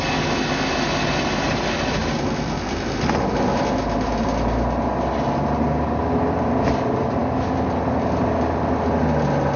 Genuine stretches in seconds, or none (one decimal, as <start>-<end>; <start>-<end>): 0.0-9.6